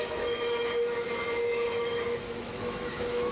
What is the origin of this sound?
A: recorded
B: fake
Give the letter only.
B